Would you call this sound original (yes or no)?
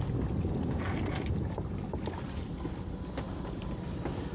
yes